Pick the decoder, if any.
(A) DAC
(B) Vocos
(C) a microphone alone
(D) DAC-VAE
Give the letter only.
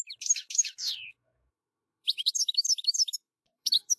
D